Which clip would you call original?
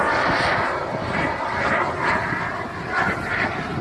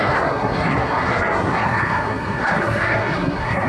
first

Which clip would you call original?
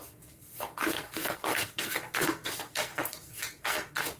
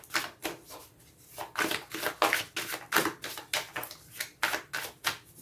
second